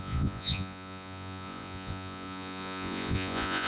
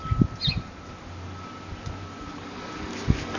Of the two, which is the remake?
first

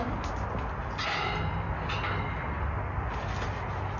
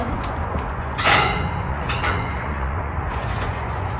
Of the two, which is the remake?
second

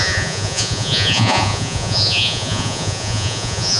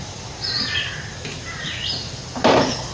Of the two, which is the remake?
first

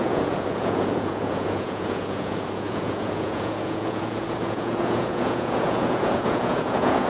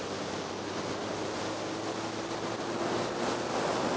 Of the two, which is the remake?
first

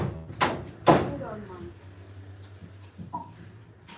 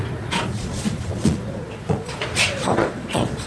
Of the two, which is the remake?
second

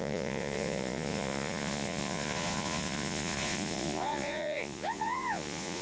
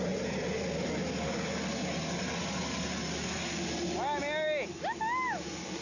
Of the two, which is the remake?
first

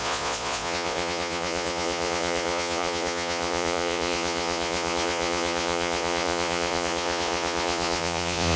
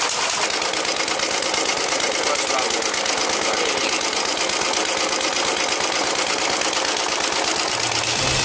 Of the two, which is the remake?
first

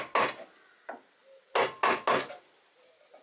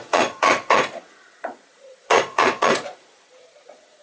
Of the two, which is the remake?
second